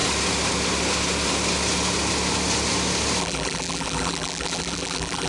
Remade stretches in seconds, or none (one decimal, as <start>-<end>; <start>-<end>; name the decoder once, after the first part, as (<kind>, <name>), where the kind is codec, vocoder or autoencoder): 3.2-5.3 (vocoder, BigVGAN v2)